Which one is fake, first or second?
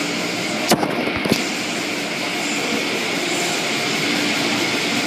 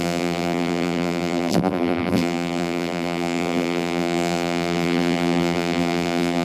second